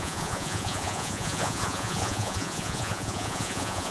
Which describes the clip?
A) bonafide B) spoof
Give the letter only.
B